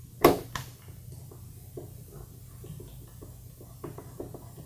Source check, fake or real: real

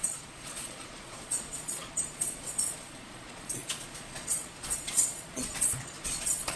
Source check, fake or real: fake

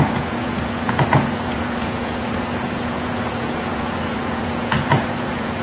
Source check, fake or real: fake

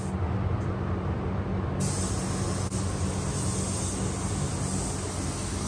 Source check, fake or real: real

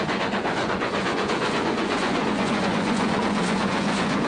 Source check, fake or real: fake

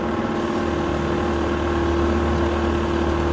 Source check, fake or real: real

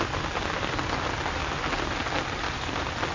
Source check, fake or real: real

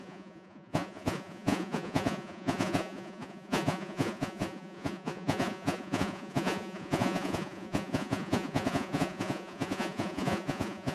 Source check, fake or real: fake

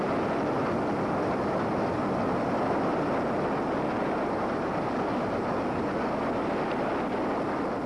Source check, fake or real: real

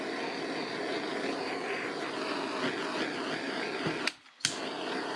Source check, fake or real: real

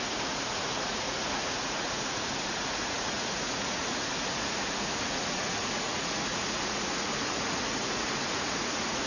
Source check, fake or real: fake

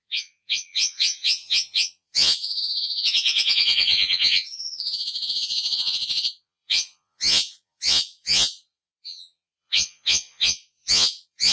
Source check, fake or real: fake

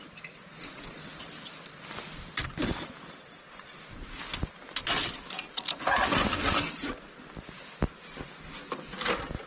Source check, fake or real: real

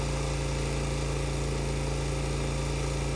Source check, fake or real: real